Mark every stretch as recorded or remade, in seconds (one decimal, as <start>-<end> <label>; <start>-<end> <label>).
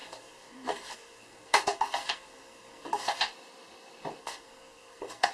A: 0.0-3.2 remade; 3.2-4.2 recorded; 4.2-5.3 remade